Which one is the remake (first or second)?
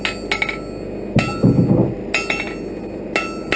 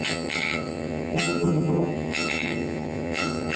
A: second